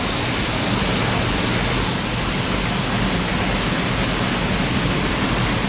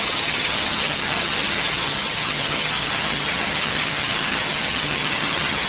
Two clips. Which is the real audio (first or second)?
first